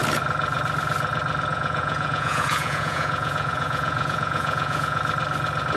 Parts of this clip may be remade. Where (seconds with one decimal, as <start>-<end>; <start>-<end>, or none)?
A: 1.5-5.0